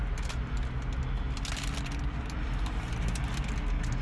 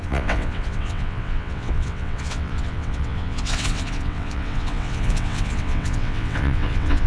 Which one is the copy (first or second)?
second